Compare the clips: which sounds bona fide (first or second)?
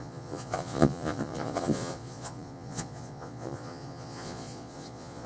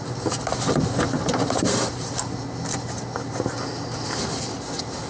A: second